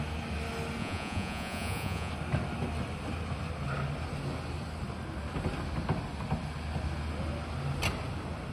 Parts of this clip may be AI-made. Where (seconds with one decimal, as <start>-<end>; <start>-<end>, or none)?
0.8-2.1